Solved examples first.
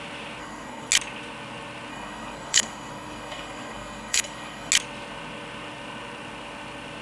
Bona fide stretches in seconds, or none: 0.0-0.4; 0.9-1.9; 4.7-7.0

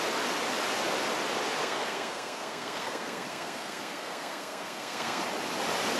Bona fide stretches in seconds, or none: 0.0-1.6; 5.2-6.0

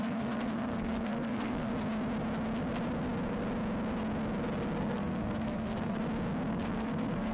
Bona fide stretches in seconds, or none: 1.7-4.8; 6.0-6.5

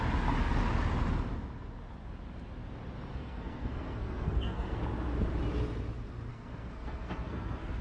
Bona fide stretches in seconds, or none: 0.0-3.1; 4.8-6.3

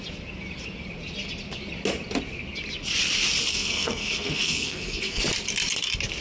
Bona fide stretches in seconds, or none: 0.0-3.5; 5.2-6.2

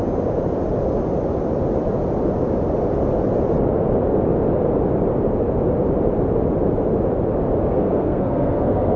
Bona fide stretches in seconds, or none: 0.0-7.7